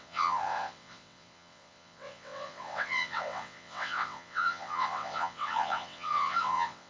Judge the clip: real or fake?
fake